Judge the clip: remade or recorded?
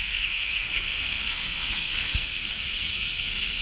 remade